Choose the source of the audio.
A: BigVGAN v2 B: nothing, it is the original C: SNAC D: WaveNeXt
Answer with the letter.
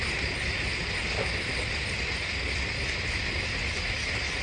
B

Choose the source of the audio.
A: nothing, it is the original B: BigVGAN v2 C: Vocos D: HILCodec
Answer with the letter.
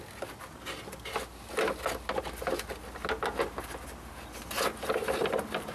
A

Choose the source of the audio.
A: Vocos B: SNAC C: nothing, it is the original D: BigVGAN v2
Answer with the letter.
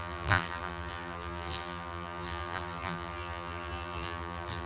D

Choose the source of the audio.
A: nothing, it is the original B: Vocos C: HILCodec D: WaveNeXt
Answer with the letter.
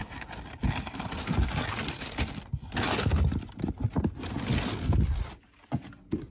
A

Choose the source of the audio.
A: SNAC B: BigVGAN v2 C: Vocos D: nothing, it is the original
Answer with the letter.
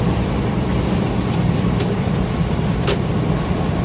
B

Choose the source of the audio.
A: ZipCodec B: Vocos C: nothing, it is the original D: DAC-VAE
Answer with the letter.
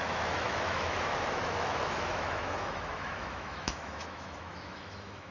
D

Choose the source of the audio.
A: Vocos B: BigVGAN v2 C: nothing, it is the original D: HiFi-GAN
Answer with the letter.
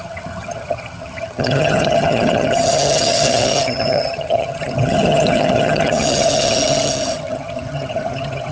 D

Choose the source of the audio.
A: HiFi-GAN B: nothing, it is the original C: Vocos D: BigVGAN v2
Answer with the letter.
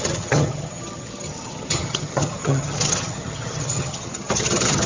A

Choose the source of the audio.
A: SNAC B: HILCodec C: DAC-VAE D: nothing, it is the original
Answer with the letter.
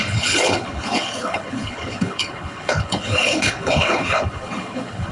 B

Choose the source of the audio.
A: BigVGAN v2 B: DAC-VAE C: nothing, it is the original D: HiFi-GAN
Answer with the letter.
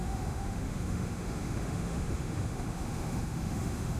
B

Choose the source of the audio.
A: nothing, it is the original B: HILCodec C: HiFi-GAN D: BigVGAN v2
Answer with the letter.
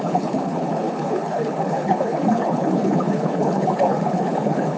B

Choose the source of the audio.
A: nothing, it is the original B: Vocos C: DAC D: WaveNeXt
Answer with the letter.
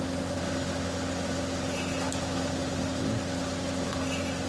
A